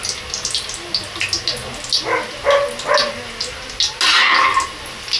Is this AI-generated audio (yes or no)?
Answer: no